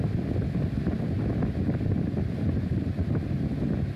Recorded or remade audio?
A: recorded